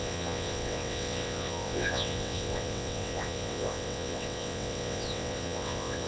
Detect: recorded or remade remade